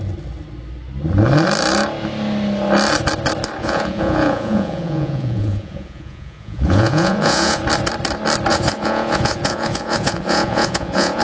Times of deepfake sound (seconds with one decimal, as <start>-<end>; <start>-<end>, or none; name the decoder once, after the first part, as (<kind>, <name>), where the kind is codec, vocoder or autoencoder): 3.6-7.6 (vocoder, Vocos); 8.5-11.2